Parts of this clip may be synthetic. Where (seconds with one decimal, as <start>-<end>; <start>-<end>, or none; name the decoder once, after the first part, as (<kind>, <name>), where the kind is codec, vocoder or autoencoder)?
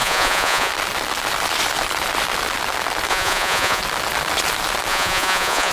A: 0.0-0.7 (vocoder, Vocos); 3.1-3.8; 4.9-5.7